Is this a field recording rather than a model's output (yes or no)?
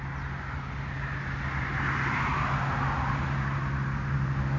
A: yes